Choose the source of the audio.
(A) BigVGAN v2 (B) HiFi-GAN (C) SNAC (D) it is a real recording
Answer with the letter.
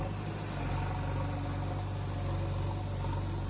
D